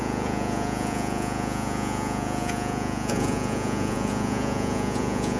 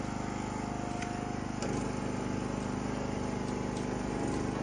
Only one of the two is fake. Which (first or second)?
first